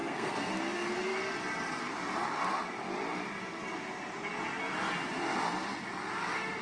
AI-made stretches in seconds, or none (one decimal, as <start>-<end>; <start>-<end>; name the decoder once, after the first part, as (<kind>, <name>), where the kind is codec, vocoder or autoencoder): 0.0-0.5 (codec, SNAC)